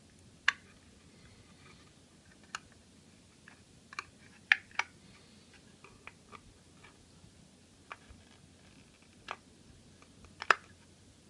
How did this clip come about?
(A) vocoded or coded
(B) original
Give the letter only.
B